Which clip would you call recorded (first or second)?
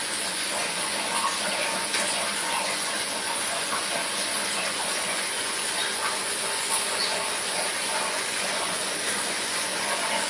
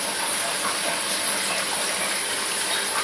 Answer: second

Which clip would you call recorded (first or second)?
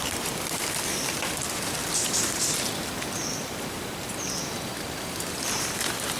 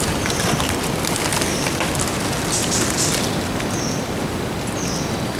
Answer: second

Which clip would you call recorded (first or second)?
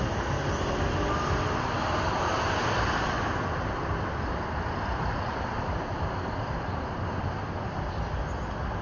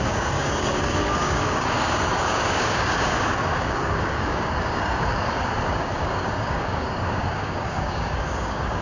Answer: first